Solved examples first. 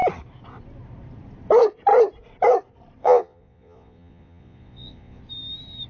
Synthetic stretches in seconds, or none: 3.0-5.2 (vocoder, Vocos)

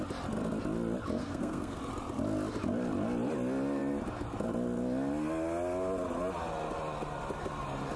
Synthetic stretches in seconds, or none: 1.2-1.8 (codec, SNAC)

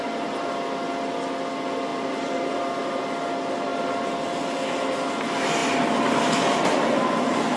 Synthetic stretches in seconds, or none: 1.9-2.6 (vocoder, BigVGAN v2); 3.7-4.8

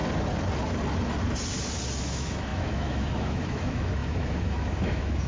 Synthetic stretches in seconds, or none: 2.0-5.3 (autoencoder, DAC-VAE)

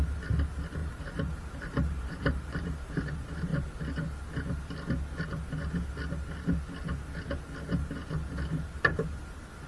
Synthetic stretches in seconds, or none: 0.8-3.1 (vocoder, BigVGAN v2)

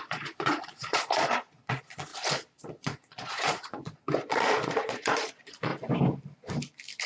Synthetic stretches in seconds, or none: 0.0-2.1 (vocoder, Vocos); 2.6-5.7

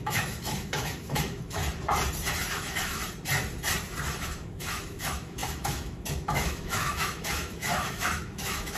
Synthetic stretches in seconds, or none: 0.0-1.6 (autoencoder, DAC-VAE); 2.5-3.0; 4.2-8.8

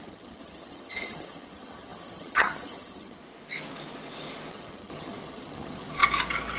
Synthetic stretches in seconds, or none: 0.0-3.2 (vocoder, HiFi-GAN); 4.5-6.0